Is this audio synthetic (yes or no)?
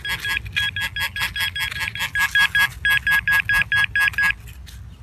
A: no